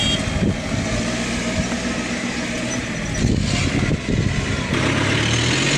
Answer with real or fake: real